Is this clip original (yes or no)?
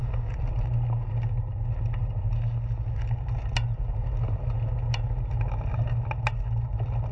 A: yes